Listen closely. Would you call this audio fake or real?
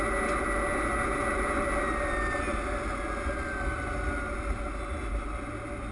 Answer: real